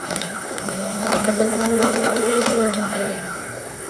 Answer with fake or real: fake